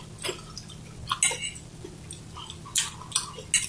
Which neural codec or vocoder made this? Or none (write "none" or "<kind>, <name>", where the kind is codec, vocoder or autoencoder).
none